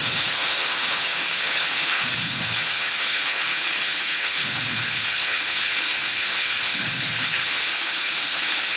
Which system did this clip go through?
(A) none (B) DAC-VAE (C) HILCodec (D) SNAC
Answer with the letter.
C